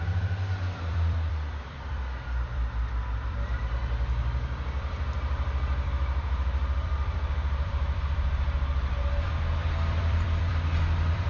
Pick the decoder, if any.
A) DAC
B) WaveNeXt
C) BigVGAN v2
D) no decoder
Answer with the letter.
C